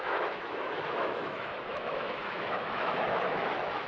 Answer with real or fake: fake